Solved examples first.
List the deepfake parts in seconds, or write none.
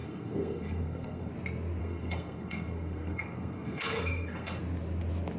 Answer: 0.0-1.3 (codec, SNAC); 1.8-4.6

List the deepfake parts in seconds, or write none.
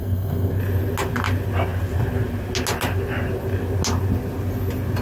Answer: 0.0-0.6 (codec, SNAC)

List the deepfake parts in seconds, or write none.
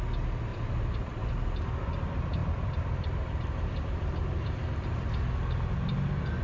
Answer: 0.5-1.5 (vocoder, BigVGAN v2); 2.4-6.4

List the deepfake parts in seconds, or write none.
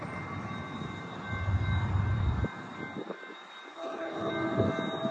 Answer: 3.7-4.3 (codec, HILCodec)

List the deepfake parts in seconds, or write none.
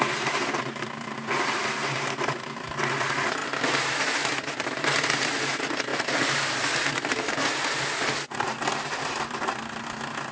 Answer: none